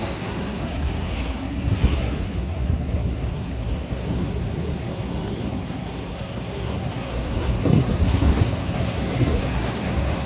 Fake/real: fake